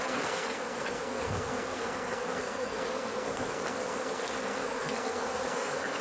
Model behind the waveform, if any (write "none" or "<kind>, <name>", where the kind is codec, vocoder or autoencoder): codec, SNAC